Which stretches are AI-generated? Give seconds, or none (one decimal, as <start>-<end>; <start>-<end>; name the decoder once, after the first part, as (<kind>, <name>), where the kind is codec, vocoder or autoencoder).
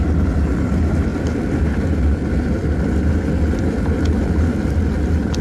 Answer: none